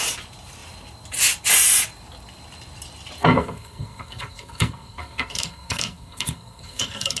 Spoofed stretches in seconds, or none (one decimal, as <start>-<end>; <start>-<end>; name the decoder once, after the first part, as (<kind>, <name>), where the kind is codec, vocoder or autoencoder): 3.2-7.2 (codec, SNAC)